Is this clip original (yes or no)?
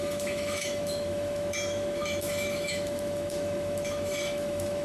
no